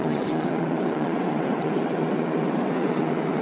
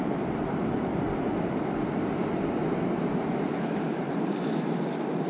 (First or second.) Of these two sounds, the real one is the second